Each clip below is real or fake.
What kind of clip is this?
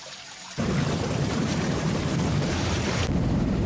fake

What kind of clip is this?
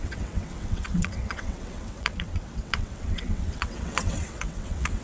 fake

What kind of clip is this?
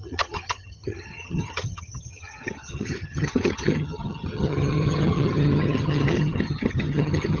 fake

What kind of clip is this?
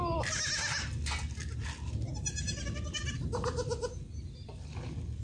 real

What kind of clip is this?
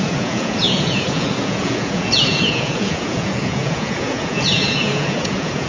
fake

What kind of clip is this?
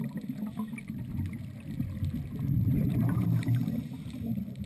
real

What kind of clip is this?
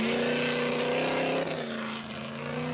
real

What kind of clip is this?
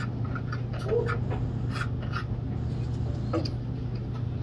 real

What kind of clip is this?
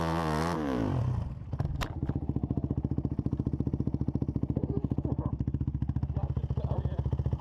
real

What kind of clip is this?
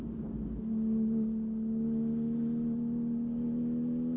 real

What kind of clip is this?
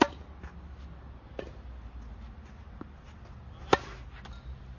real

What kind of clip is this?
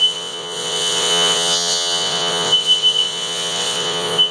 fake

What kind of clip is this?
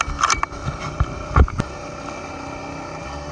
real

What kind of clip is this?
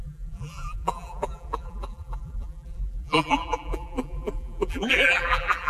fake